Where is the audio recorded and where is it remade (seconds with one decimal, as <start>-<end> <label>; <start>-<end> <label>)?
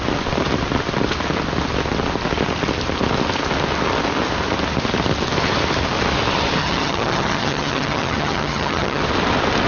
0.0-6.6 recorded; 6.6-9.0 remade; 9.0-9.7 recorded